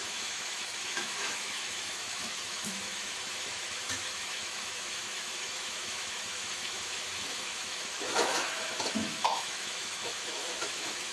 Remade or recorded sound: remade